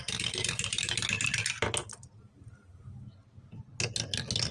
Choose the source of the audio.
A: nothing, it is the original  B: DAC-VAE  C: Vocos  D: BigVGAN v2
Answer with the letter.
A